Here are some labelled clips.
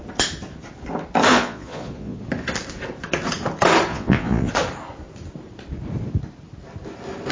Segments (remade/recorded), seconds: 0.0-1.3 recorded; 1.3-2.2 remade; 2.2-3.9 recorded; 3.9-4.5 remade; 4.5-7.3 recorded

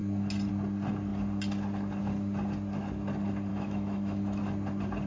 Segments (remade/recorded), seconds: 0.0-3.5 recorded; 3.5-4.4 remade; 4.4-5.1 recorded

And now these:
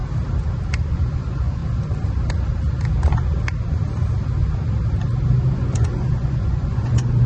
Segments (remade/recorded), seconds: 0.0-0.9 recorded; 0.9-1.6 remade; 1.6-5.5 recorded; 5.5-7.3 remade

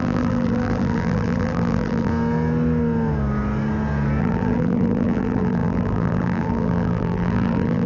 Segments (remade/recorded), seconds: 0.0-2.1 remade; 2.1-4.2 recorded; 4.2-7.9 remade

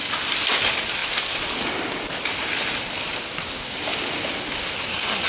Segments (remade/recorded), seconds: 0.0-5.3 recorded